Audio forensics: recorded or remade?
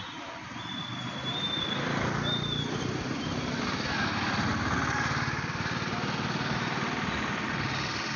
recorded